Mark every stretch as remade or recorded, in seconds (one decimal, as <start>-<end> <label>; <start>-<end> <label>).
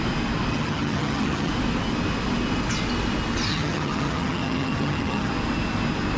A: 0.0-0.5 recorded; 0.5-1.5 remade; 1.5-3.5 recorded; 3.5-5.3 remade; 5.3-6.2 recorded